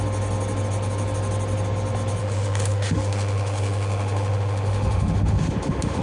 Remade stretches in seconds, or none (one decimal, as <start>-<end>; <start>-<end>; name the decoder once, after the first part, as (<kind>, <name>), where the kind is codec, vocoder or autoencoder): 2.2-6.0 (autoencoder, DAC-VAE)